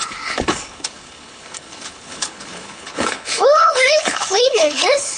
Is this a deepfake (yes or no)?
yes